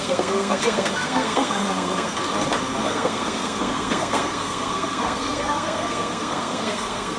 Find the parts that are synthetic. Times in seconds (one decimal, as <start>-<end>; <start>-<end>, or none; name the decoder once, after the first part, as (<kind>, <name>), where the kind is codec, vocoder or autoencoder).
0.0-2.2 (codec, SNAC); 2.8-7.2